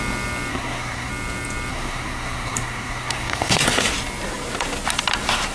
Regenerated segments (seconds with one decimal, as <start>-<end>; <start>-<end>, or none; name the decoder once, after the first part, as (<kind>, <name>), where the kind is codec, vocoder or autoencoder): 0.5-1.1 (codec, SNAC); 1.7-3.6